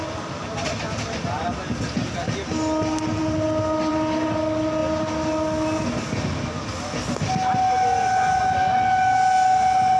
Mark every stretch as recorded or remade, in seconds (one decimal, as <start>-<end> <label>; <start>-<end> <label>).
0.0-10.0 recorded